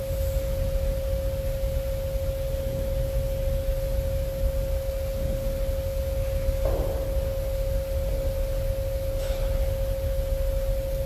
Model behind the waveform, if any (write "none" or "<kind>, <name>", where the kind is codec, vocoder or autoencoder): none